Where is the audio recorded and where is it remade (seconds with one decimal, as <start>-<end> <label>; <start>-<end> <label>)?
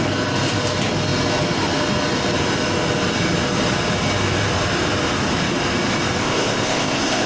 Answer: 0.0-6.2 recorded; 6.2-7.3 remade